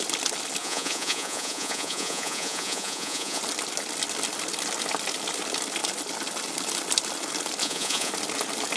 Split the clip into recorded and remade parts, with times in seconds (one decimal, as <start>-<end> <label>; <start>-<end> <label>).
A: 0.0-0.6 recorded; 0.6-3.4 remade; 3.4-7.6 recorded; 7.6-8.1 remade; 8.1-8.8 recorded